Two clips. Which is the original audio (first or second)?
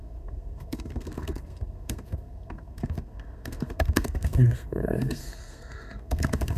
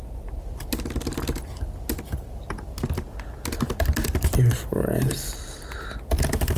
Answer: second